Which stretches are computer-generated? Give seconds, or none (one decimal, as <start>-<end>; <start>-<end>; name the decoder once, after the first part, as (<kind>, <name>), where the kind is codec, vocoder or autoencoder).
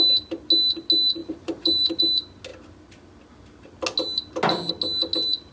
1.2-2.0 (vocoder, BigVGAN v2)